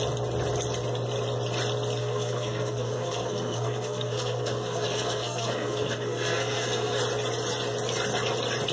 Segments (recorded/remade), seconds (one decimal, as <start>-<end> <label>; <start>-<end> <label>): 0.0-2.0 recorded; 2.0-7.0 remade; 7.0-8.7 recorded